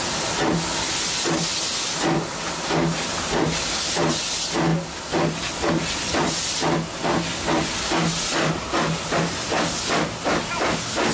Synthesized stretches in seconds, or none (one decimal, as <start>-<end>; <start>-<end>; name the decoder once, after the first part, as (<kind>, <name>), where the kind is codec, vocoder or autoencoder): none